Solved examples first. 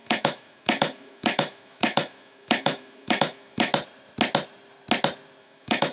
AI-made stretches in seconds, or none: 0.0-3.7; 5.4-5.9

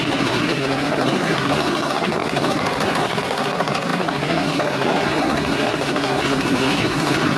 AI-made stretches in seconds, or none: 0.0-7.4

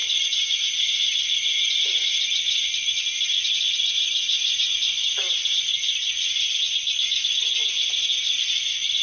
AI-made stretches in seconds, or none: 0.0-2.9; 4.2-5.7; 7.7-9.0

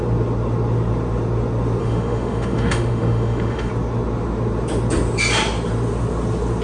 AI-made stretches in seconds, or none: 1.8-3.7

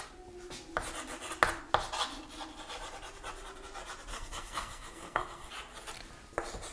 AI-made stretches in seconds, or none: 4.1-5.5

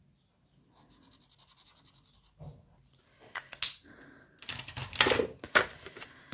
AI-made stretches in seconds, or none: none

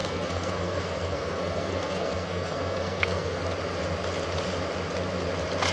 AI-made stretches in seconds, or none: 0.0-3.4

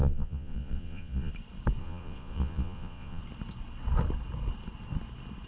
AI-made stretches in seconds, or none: 0.0-1.3; 1.8-3.2